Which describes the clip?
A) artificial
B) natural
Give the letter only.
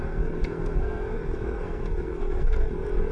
A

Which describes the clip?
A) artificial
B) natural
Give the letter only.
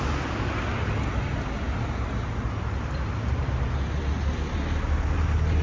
B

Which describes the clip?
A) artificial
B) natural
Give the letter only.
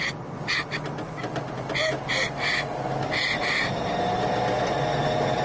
B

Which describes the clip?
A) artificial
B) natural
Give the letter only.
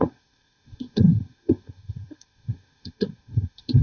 A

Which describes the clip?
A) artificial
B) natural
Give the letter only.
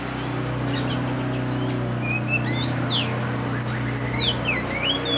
B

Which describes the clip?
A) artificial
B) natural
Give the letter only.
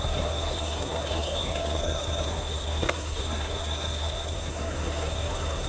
A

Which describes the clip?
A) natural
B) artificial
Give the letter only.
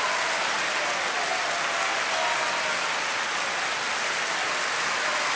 A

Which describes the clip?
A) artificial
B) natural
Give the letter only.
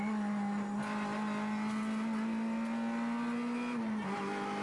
B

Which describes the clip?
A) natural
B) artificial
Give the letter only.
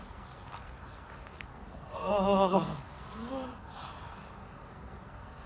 B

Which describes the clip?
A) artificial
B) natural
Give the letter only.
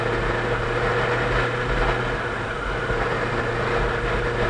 B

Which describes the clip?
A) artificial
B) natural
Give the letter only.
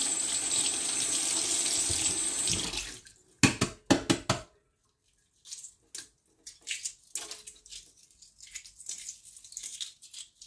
B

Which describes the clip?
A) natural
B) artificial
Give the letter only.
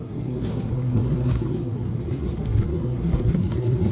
B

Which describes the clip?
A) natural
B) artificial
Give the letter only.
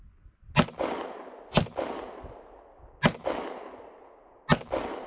A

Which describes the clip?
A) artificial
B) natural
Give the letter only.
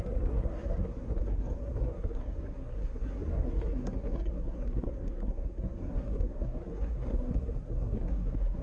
A